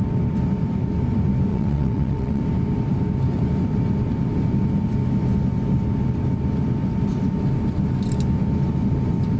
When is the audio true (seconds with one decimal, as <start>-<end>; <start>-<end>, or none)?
0.0-1.5; 2.4-9.4